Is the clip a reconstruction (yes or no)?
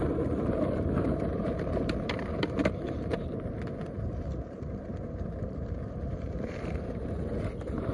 yes